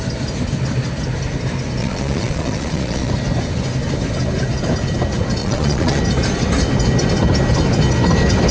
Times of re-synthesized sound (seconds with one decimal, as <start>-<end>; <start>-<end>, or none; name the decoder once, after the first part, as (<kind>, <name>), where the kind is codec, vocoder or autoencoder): 1.8-3.1 (vocoder, Vocos); 5.4-6.0